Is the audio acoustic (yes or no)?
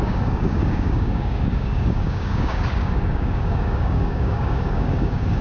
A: no